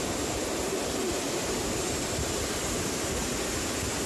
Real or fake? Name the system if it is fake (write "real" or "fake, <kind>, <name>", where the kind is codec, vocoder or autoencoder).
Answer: real